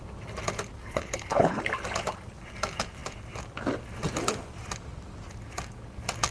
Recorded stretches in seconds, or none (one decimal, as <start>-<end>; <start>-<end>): 0.0-0.8; 1.6-6.3